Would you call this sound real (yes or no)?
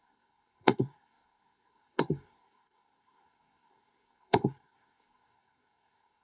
no